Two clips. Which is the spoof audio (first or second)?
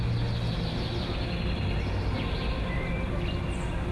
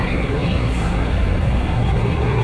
second